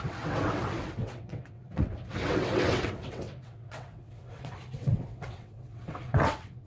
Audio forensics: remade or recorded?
remade